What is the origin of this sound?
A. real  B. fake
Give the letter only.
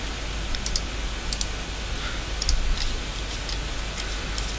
A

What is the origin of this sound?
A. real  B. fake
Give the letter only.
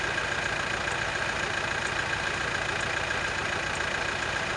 A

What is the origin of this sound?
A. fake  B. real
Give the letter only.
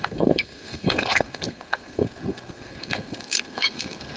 A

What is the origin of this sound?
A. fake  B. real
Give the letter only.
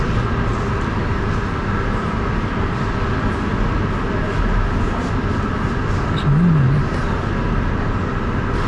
B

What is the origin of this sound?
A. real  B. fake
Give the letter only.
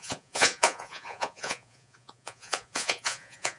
B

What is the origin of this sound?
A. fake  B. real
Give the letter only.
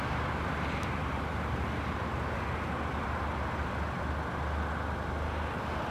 B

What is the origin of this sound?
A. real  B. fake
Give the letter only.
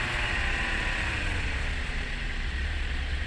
B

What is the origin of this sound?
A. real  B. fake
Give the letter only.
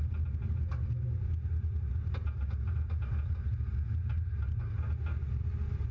A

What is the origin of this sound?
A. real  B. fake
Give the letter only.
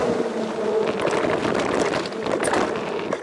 A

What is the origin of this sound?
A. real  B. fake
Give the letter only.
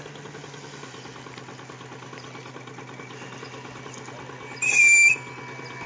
A